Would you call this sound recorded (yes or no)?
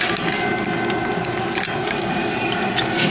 yes